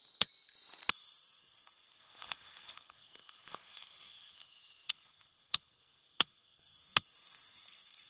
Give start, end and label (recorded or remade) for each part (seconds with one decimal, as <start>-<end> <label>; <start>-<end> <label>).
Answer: 0.0-0.9 recorded; 0.9-8.1 remade